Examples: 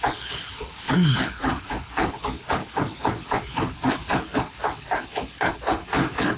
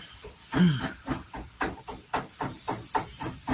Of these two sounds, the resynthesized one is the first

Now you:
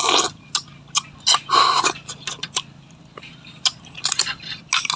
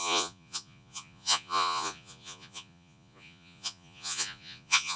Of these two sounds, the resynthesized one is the second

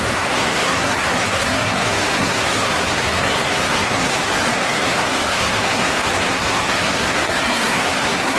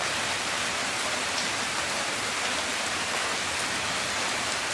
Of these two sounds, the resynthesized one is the first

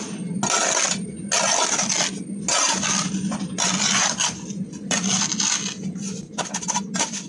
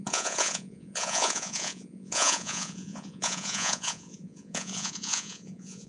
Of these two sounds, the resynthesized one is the second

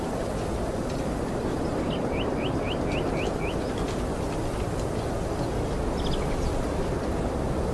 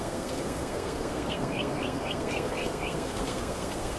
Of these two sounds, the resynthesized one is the second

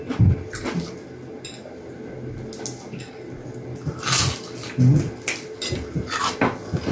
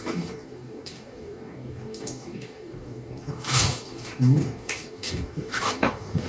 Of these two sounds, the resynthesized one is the second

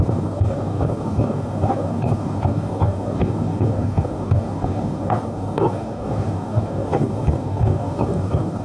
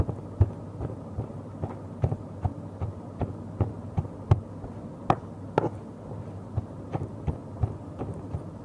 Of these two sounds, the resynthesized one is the first